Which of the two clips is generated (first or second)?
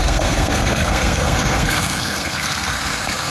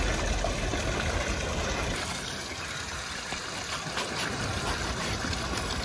first